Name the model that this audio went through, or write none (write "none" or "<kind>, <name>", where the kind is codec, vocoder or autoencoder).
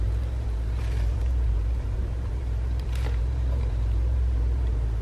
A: vocoder, BigVGAN v2